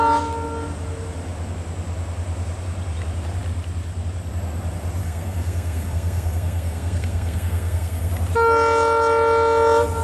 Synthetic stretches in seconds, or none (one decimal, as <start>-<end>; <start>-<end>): 5.0-8.1